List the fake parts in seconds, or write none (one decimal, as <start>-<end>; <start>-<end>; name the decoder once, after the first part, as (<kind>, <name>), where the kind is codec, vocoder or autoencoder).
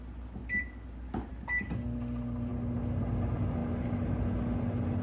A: none